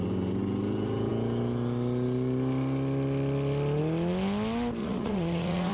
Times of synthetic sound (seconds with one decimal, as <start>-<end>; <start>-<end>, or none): 4.8-5.7